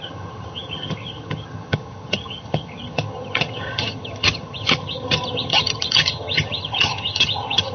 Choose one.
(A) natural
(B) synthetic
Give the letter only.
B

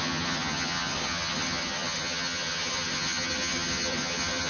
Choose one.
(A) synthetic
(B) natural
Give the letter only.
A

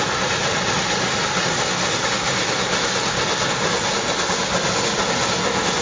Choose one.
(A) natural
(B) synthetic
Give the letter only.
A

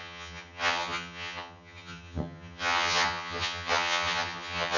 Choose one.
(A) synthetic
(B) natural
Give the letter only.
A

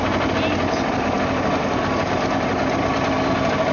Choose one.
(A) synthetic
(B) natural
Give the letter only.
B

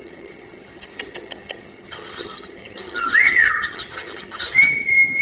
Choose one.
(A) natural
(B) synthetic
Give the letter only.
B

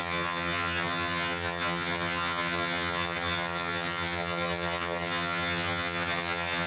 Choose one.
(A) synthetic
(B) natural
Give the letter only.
A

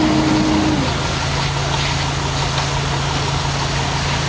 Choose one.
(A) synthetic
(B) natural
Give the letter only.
B